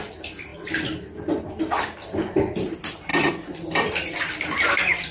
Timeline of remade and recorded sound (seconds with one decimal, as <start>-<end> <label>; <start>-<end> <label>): 0.0-5.1 recorded